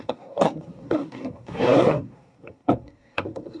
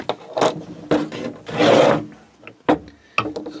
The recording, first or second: second